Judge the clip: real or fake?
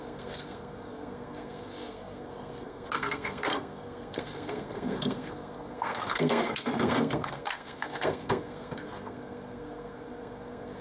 fake